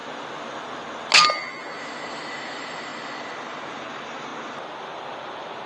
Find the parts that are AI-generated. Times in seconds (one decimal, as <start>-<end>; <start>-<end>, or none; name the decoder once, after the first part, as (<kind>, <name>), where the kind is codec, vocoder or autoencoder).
2.1-2.9 (vocoder, BigVGAN v2); 3.7-4.3